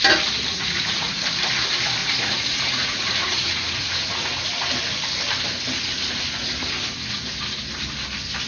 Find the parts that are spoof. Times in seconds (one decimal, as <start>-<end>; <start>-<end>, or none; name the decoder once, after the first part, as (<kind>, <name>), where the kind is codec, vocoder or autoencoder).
0.5-1.2 (vocoder, Vocos); 2.0-4.3